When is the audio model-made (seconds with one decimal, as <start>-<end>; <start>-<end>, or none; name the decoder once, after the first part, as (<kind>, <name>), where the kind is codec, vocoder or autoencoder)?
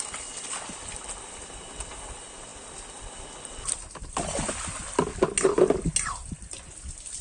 none